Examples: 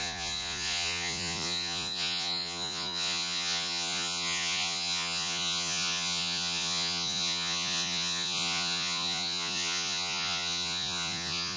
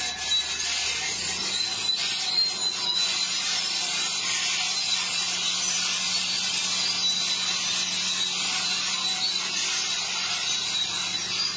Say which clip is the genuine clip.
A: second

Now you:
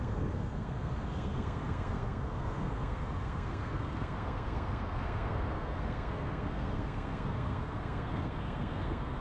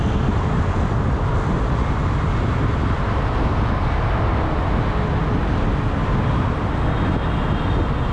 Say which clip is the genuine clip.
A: second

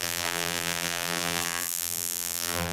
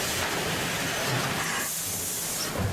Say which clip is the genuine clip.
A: second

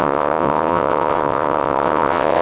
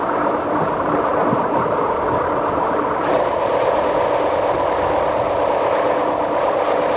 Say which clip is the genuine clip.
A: second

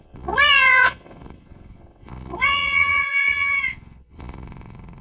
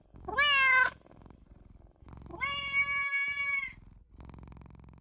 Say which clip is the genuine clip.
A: second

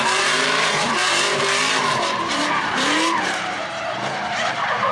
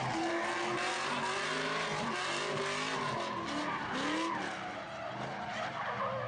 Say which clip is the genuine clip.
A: second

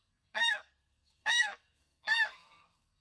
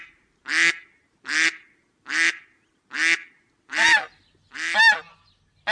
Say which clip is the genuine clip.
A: second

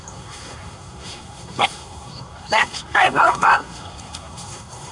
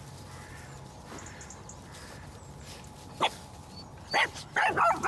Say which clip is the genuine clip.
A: second